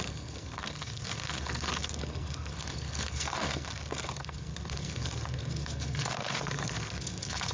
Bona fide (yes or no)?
no